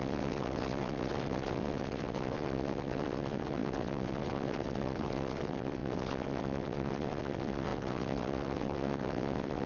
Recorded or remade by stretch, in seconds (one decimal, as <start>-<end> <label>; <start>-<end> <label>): 0.0-9.7 remade